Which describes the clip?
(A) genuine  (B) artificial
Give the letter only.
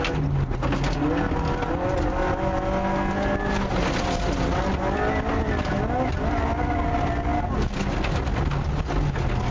A